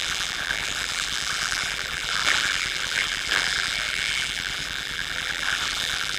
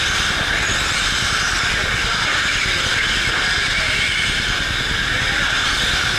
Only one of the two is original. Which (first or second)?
second